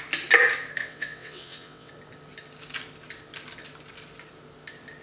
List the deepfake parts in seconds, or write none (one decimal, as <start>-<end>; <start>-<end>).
0.8-1.9

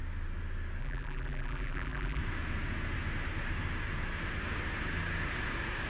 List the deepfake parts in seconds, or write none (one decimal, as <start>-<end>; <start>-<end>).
0.8-2.2

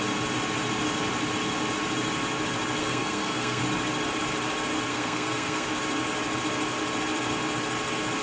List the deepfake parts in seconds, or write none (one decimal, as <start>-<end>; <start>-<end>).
2.8-3.6; 4.9-5.7

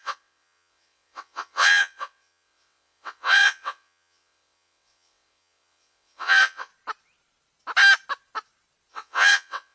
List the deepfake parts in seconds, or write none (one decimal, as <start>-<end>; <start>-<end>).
0.0-6.7; 8.9-9.7

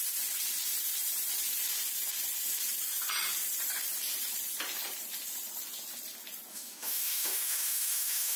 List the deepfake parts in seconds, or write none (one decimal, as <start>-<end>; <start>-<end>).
6.5-8.4